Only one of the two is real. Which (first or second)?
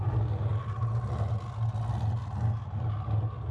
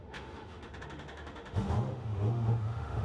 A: first